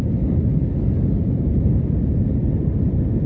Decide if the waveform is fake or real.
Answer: real